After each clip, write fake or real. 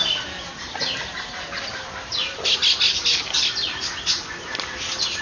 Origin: real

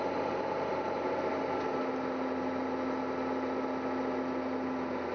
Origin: real